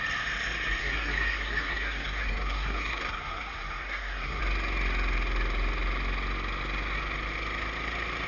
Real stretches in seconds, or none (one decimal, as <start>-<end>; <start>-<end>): 0.0-0.8; 4.4-8.3